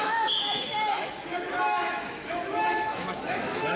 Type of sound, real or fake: fake